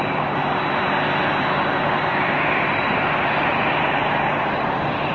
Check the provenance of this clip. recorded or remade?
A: recorded